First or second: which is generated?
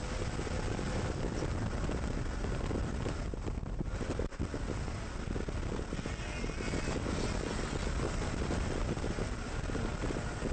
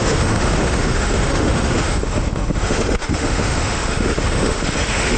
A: second